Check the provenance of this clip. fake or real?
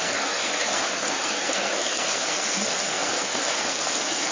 fake